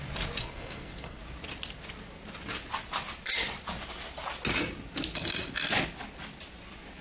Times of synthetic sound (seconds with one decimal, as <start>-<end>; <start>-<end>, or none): 0.4-1.2